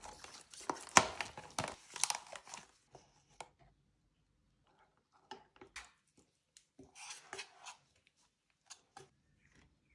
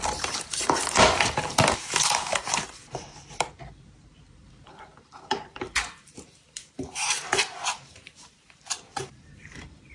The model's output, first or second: second